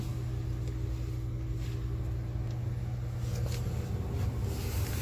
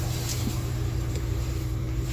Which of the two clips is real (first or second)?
first